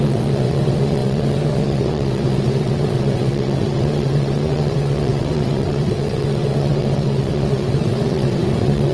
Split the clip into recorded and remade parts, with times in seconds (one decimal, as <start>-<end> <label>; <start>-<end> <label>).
0.0-8.9 remade